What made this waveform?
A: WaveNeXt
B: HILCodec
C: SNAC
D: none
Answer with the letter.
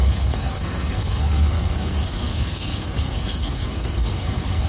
C